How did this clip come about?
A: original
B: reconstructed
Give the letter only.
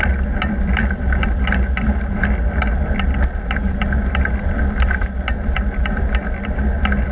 A